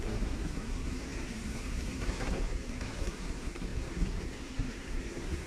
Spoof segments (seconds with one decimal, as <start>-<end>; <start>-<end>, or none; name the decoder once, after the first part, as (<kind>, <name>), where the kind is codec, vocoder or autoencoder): 0.0-5.5 (codec, SNAC)